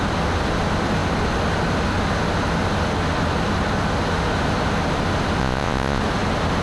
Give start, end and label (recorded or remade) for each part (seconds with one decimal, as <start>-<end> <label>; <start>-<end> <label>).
0.0-5.4 recorded; 5.4-6.0 remade; 6.0-6.6 recorded